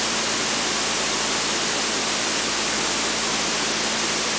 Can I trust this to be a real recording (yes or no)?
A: yes